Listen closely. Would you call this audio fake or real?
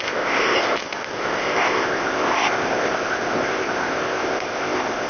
fake